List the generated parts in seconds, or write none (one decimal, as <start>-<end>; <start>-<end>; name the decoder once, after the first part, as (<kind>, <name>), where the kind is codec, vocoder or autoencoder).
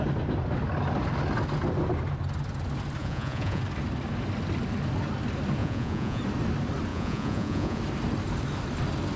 3.0-3.6 (vocoder, Vocos); 5.6-6.2; 6.9-7.8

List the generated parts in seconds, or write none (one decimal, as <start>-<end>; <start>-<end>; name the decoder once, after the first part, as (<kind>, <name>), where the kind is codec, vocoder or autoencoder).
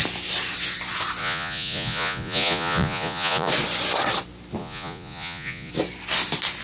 1.2-3.5 (vocoder, Vocos); 4.6-5.7